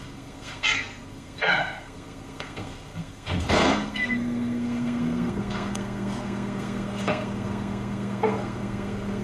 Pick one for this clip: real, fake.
fake